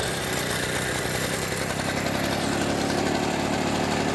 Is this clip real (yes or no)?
yes